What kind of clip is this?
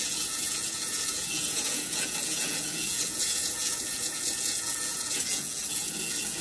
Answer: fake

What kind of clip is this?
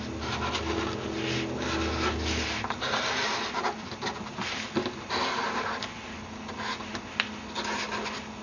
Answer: real